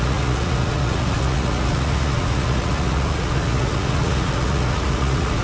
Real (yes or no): no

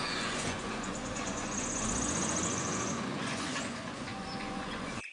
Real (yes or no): no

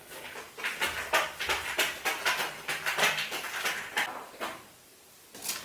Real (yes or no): yes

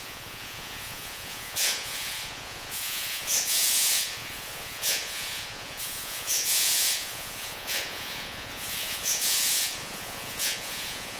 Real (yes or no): no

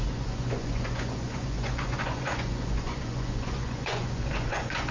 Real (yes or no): no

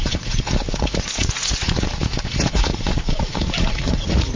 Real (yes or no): no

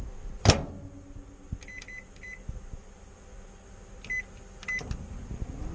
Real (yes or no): yes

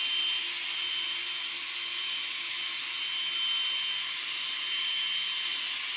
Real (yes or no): yes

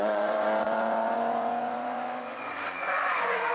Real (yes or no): no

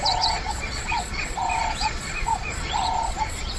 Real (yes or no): no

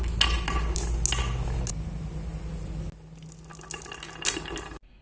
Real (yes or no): yes